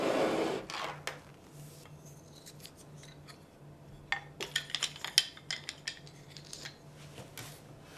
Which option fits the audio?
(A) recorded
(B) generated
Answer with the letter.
A